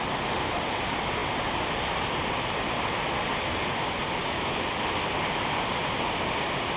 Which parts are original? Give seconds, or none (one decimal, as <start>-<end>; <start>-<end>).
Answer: 0.0-6.8